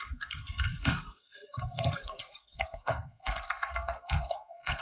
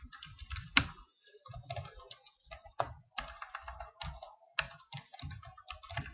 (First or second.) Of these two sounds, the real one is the second